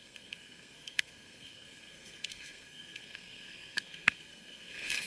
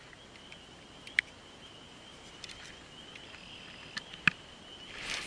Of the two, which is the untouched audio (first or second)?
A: second